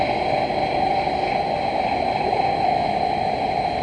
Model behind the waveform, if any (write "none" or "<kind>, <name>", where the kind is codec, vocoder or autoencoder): none